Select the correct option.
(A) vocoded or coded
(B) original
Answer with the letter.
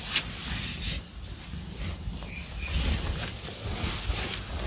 B